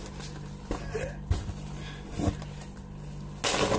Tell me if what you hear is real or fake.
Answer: real